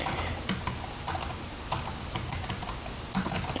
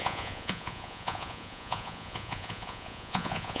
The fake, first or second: second